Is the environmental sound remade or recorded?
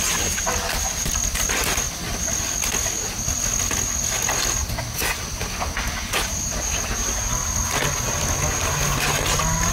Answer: recorded